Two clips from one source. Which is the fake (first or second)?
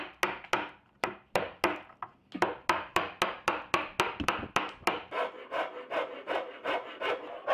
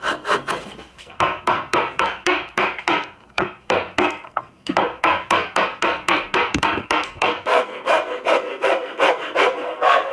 second